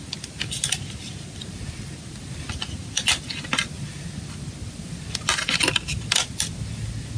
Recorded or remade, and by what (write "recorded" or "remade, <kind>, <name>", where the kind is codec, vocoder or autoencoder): recorded